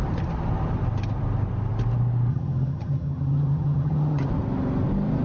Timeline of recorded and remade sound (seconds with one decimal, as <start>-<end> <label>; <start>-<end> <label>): 0.0-2.3 recorded; 2.3-4.3 remade; 4.3-5.2 recorded